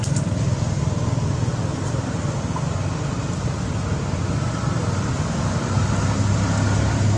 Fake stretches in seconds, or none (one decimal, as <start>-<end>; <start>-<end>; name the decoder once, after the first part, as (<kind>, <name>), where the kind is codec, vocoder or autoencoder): none